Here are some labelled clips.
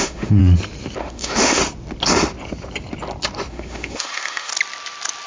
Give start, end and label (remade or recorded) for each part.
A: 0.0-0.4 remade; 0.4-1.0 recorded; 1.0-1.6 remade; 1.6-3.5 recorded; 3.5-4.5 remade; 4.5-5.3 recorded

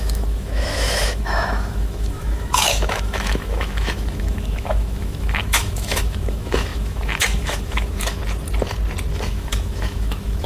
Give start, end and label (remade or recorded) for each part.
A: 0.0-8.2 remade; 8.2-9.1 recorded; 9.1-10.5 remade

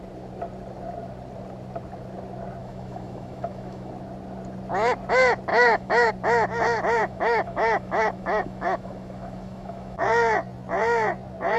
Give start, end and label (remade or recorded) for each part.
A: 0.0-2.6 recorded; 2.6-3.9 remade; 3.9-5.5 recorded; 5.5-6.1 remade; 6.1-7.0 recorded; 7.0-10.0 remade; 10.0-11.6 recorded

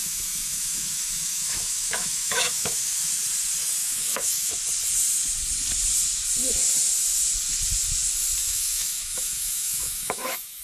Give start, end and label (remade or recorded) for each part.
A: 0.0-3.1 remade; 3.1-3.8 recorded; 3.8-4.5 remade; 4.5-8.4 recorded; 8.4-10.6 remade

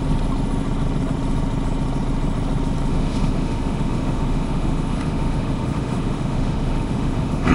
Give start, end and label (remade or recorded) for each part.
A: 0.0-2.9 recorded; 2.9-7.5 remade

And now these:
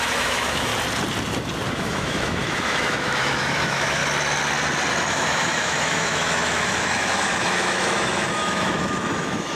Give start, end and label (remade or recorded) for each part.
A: 0.0-0.7 remade; 0.7-1.7 recorded; 1.7-4.0 remade; 4.0-5.1 recorded; 5.1-9.6 remade

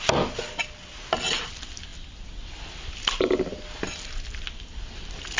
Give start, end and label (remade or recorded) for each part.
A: 0.0-5.4 recorded

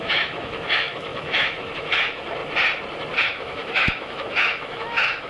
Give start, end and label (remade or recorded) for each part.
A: 0.0-2.4 remade; 2.4-3.2 recorded; 3.2-5.3 remade